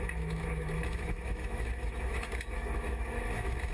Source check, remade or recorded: remade